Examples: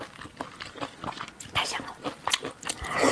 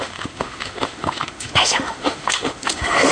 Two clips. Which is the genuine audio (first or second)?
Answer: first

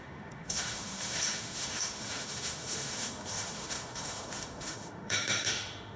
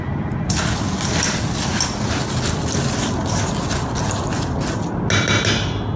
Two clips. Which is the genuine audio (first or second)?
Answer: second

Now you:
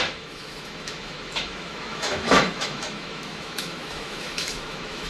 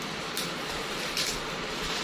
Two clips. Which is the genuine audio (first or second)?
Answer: second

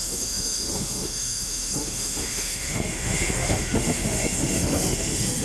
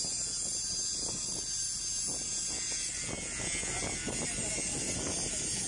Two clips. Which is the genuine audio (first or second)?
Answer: second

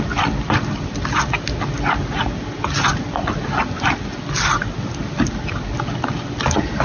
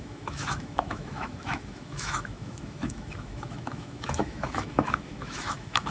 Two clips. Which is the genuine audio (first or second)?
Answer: first